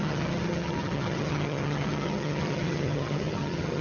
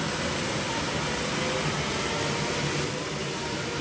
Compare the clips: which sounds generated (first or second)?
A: first